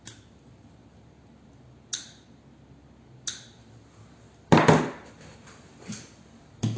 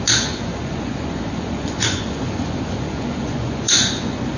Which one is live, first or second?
first